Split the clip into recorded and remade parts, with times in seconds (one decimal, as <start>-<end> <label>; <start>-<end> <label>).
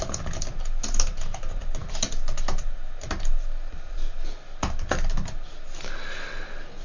0.0-6.8 recorded